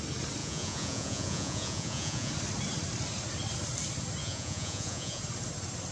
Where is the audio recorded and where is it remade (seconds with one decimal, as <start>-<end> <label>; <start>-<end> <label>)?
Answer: 0.0-0.4 recorded; 0.4-2.3 remade; 2.3-4.2 recorded; 4.2-5.2 remade; 5.2-5.9 recorded